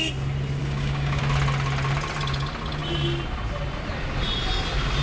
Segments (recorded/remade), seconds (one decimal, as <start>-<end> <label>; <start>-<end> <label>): 0.0-0.6 recorded; 0.6-1.2 remade; 1.2-5.0 recorded

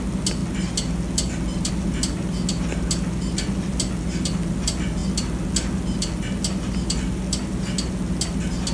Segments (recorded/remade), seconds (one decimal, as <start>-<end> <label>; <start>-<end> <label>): 0.0-8.7 recorded

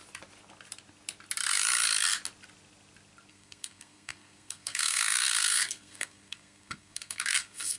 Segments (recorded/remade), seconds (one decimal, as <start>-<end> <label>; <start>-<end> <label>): 0.0-3.3 recorded; 3.3-7.8 remade

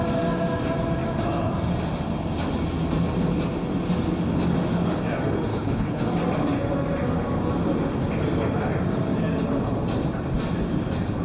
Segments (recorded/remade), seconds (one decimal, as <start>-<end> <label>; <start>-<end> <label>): 0.0-5.5 recorded; 5.5-6.0 remade; 6.0-11.2 recorded

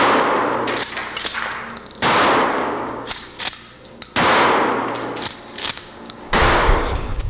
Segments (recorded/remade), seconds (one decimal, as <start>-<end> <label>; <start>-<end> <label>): 0.0-2.6 recorded; 2.6-3.4 remade; 3.4-5.6 recorded; 5.6-7.3 remade

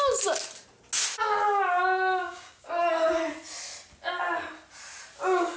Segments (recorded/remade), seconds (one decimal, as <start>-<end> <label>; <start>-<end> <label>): 0.0-2.2 recorded; 2.2-2.7 remade; 2.7-5.6 recorded

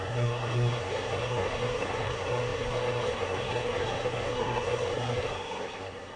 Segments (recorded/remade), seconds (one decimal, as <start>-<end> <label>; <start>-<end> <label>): 0.0-6.2 remade